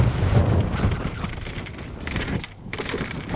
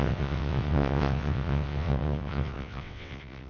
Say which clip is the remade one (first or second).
second